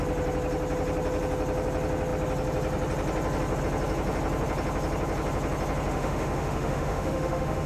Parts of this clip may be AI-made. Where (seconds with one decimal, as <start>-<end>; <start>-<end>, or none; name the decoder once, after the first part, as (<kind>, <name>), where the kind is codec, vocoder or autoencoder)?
5.9-7.7 (autoencoder, DAC-VAE)